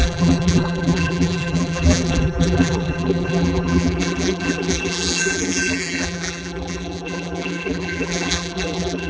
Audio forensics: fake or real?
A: fake